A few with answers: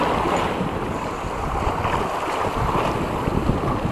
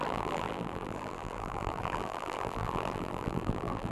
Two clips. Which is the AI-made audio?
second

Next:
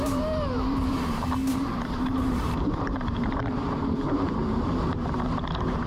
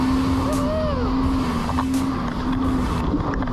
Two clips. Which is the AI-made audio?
first